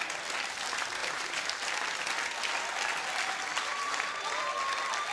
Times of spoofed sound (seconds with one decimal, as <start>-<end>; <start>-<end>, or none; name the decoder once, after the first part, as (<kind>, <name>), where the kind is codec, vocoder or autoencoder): 1.0-1.8 (vocoder, BigVGAN v2); 3.7-4.2